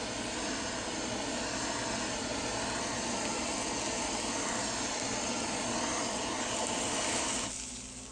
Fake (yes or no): no